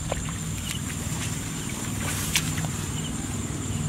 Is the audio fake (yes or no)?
yes